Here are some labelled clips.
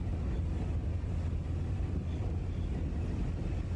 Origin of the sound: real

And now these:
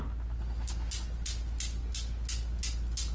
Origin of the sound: real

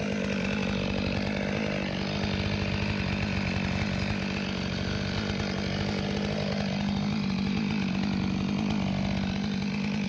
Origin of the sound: real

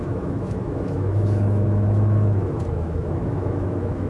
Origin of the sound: fake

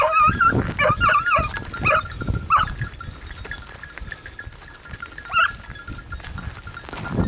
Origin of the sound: real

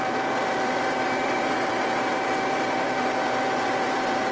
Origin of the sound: fake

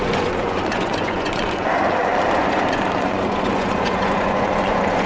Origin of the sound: fake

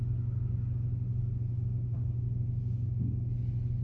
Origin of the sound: real